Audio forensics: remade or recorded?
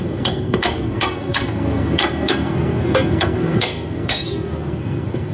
remade